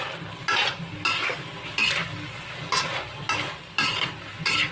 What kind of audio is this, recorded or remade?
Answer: recorded